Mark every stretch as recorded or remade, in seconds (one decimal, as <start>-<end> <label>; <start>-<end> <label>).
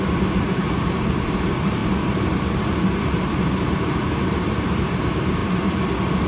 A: 0.0-5.4 remade; 5.4-6.3 recorded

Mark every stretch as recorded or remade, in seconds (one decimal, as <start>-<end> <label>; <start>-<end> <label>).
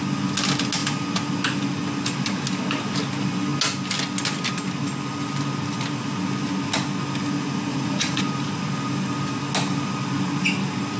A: 0.0-7.7 recorded; 7.7-8.2 remade; 8.2-11.0 recorded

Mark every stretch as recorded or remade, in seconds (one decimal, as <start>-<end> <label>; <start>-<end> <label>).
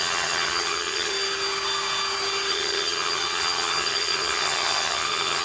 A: 0.0-1.1 remade; 1.1-2.5 recorded; 2.5-5.4 remade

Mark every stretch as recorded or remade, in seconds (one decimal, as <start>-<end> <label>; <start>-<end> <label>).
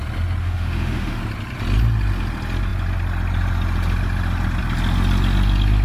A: 0.0-0.4 recorded; 0.4-1.2 remade; 1.2-5.8 recorded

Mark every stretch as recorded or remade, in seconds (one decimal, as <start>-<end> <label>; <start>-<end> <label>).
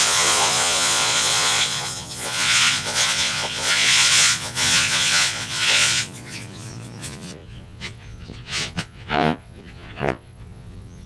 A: 0.0-11.1 remade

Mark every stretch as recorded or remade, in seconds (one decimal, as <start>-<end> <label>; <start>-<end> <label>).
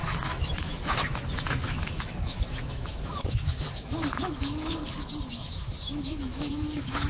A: 0.0-4.8 remade; 4.8-5.3 recorded; 5.3-7.1 remade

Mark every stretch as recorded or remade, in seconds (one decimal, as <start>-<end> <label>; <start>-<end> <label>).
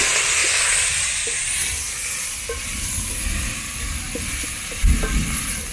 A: 0.0-5.7 recorded